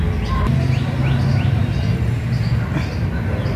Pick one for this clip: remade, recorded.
recorded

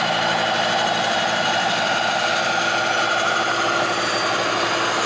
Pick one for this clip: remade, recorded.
recorded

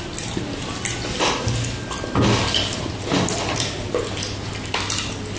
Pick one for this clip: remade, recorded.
recorded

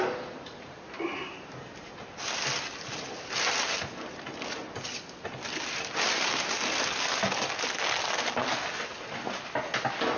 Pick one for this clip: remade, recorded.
recorded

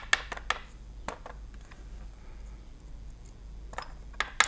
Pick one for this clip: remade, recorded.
recorded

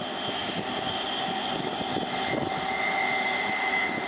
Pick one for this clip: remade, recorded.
recorded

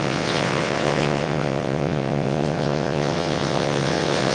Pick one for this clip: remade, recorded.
remade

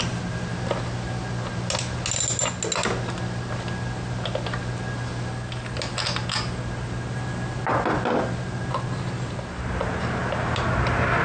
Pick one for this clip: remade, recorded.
recorded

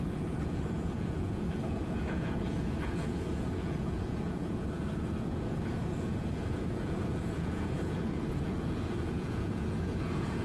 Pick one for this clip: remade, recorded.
remade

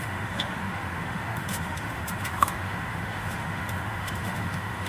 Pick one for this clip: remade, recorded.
remade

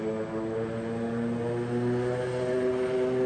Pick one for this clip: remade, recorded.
recorded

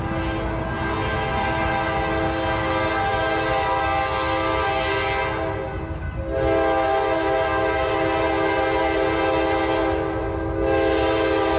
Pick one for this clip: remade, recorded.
recorded